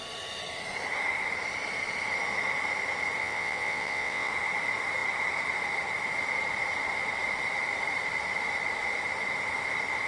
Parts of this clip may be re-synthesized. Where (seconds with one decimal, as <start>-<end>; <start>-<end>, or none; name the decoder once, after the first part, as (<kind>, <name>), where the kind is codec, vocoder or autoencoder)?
3.2-4.3 (vocoder, WaveNeXt)